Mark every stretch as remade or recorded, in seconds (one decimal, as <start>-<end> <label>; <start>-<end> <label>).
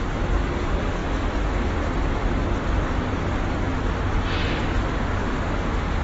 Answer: 0.0-5.2 recorded; 5.2-6.0 remade